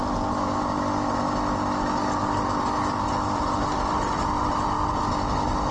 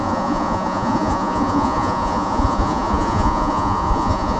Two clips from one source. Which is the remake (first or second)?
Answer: second